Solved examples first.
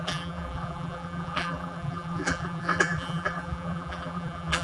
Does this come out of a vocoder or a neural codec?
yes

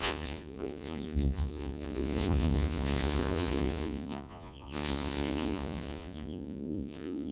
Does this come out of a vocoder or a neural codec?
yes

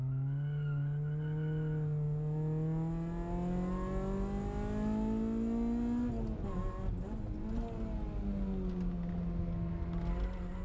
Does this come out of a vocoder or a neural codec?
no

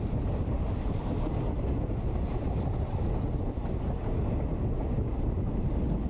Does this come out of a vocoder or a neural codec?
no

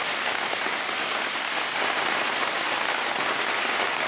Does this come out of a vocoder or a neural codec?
no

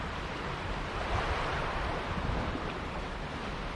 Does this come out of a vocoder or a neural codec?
yes